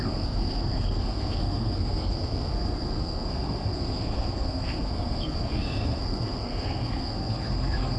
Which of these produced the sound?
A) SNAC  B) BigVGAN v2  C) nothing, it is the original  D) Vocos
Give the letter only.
A